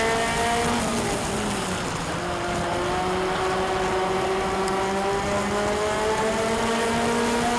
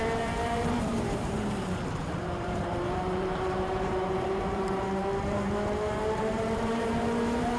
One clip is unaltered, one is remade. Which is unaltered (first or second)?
first